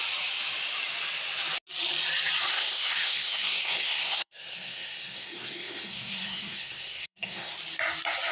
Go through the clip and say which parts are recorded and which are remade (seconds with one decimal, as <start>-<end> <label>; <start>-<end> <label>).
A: 0.0-2.5 recorded; 2.5-7.5 remade; 7.5-8.3 recorded